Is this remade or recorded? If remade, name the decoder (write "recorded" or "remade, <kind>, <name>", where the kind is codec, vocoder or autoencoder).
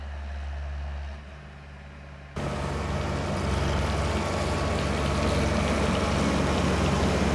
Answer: recorded